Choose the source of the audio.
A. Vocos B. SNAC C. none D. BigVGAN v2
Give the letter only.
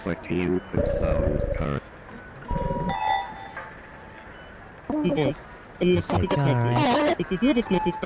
C